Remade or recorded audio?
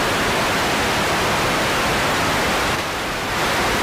remade